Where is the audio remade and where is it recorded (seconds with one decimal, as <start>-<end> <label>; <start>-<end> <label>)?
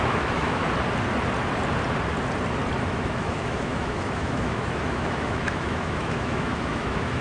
0.0-0.6 remade; 0.6-2.9 recorded; 2.9-7.2 remade